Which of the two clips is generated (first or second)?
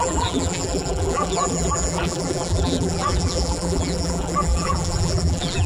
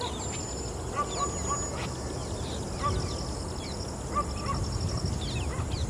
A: first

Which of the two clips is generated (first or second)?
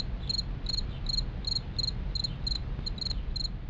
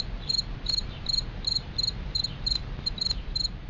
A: second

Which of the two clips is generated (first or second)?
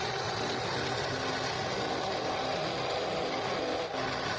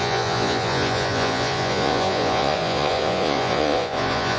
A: second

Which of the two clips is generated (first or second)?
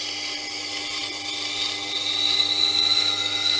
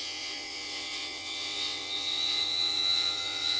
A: second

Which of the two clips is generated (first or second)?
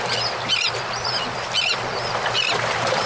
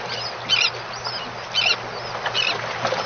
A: first